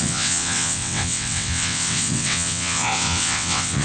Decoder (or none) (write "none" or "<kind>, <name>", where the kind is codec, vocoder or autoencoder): vocoder, WaveNeXt